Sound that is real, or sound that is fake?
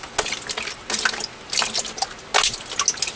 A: real